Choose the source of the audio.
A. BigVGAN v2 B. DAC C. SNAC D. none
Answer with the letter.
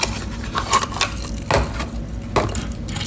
D